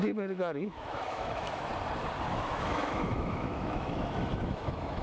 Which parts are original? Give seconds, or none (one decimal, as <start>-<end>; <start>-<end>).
1.7-2.3